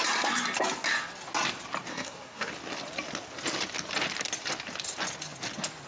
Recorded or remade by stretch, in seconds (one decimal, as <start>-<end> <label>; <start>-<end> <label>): 0.0-1.9 recorded; 1.9-2.5 remade; 2.5-5.9 recorded